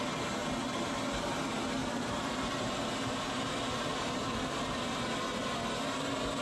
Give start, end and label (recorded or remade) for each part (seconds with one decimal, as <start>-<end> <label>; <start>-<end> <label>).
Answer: 0.0-0.4 recorded; 0.4-1.0 remade; 1.0-1.8 recorded; 1.8-5.0 remade; 5.0-6.4 recorded